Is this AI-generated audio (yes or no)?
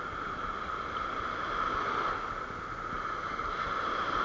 no